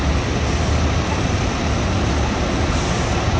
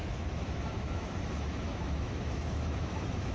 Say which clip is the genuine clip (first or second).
first